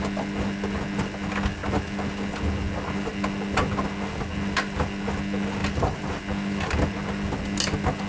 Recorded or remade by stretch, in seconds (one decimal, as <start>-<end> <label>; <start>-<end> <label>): 0.0-5.6 recorded; 5.6-6.2 remade; 6.2-8.1 recorded